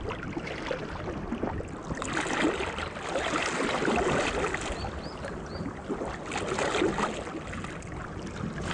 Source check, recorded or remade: recorded